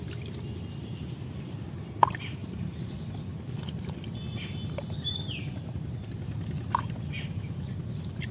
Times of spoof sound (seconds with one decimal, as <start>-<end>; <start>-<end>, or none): 2.4-2.9